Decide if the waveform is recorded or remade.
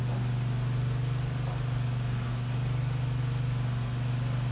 recorded